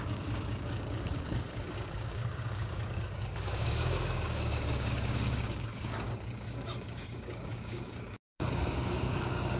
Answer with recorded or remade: remade